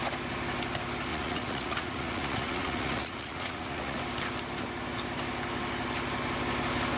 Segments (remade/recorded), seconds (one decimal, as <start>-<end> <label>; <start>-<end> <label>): 0.0-1.1 recorded; 1.1-4.0 remade; 4.0-7.0 recorded